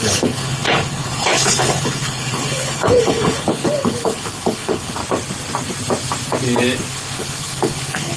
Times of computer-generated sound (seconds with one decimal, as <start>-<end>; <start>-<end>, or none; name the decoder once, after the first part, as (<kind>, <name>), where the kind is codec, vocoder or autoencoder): 0.0-5.0 (codec, HILCodec); 6.9-8.2